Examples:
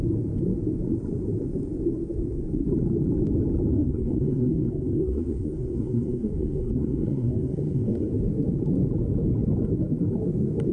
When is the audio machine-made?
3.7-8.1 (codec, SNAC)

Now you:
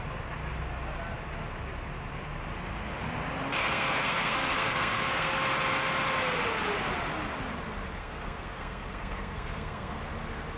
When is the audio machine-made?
3.6-5.4 (codec, SNAC); 8.0-10.0

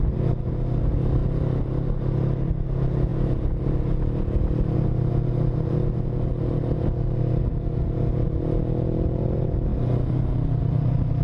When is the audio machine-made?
none

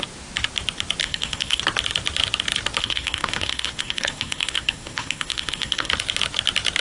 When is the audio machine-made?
1.0-1.6 (codec, SNAC); 2.8-5.9

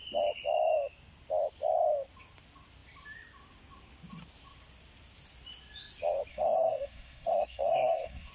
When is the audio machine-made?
6.3-8.3 (codec, SNAC)

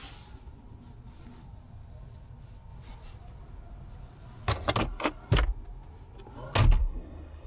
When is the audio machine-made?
6.8-7.5 (codec, SNAC)